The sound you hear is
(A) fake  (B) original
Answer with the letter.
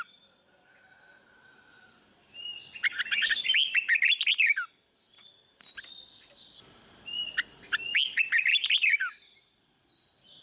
B